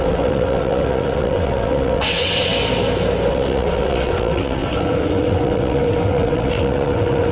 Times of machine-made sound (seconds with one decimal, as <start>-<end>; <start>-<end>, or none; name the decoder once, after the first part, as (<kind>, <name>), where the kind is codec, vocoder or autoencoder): 0.0-2.5 (vocoder, WaveNeXt); 3.3-7.3

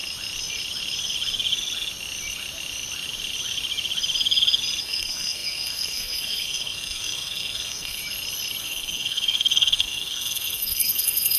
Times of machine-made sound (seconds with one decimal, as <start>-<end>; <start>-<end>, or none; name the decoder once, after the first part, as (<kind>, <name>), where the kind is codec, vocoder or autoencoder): 4.8-8.0 (codec, SNAC); 8.6-11.4

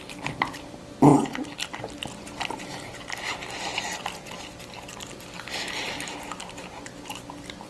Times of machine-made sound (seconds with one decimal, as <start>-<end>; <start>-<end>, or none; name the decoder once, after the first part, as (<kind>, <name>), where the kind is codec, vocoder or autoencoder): none